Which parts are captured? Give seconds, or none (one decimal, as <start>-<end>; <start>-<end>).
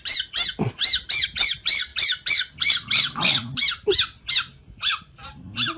0.0-1.9; 4.3-5.8